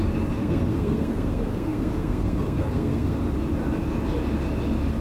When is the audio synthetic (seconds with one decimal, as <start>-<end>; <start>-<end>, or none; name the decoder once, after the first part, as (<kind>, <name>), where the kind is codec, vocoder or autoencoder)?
0.4-3.2 (codec, SNAC)